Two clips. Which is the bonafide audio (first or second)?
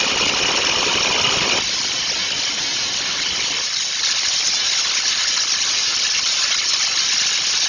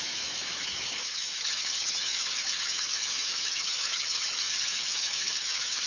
first